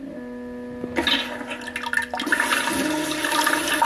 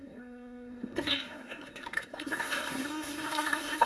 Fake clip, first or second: second